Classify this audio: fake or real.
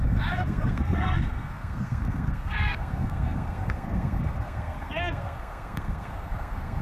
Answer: fake